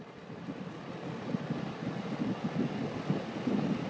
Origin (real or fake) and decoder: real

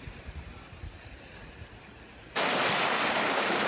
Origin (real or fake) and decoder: fake, vocoder, BigVGAN v2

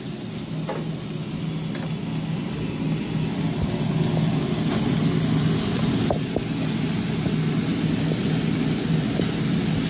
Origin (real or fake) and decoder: real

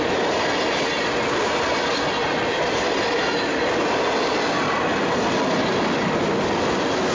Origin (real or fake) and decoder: real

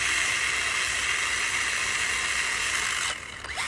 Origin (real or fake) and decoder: real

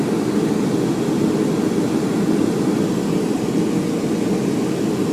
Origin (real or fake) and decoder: real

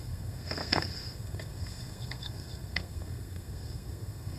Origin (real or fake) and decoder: fake, codec, SNAC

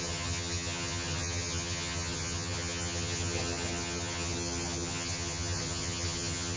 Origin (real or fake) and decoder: fake, vocoder, HiFi-GAN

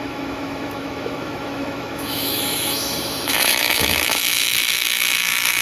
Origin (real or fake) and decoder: fake, autoencoder, DAC-VAE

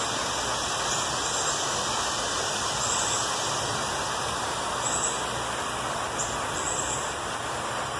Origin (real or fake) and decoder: real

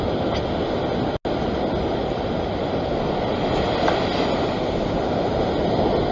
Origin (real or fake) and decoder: real